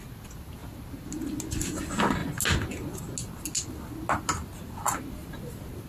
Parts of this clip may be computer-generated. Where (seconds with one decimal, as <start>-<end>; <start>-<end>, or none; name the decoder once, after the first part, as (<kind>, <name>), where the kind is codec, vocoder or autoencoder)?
none